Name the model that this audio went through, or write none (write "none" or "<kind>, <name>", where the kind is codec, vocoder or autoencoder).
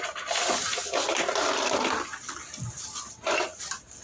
none